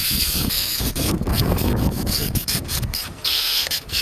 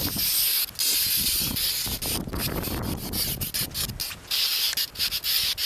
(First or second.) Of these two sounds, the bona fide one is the second